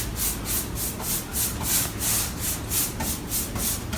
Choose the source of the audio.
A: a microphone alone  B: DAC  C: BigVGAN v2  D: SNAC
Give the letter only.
A